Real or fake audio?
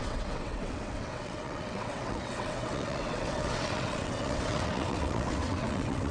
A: fake